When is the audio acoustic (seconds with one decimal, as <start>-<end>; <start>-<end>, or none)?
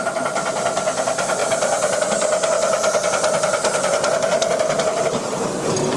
0.0-1.4; 2.0-6.0